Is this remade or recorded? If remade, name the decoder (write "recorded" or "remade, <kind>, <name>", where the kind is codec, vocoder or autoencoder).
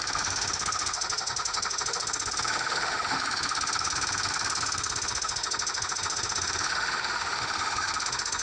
remade, autoencoder, DAC-VAE